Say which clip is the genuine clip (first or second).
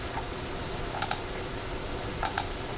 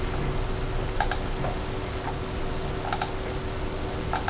second